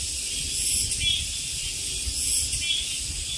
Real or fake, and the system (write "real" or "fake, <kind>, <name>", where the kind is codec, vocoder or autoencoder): real